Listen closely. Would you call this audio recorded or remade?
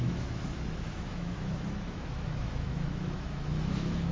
remade